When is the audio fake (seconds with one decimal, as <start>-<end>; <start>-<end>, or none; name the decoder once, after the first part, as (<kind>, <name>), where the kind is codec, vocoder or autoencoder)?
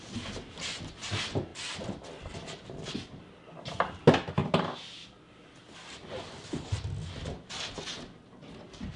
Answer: none